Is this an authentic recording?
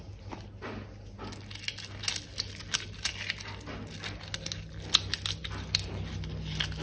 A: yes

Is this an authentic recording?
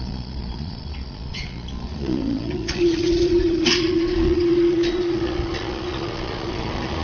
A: no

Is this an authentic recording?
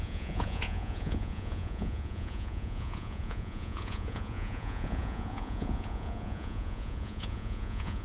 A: no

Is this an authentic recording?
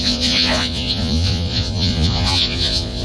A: no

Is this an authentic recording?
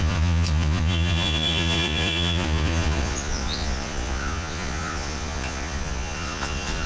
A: no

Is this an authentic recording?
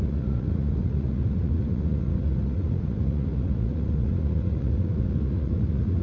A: no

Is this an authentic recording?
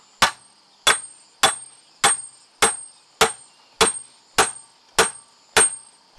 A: yes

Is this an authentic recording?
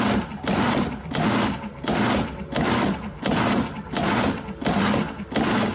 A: yes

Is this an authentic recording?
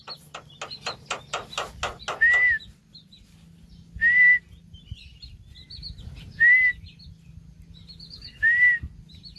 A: yes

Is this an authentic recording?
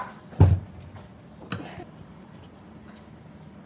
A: yes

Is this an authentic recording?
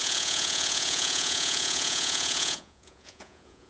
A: no